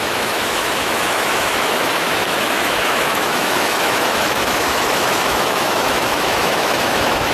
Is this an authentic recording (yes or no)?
no